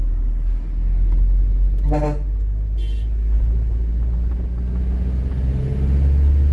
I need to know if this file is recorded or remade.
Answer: recorded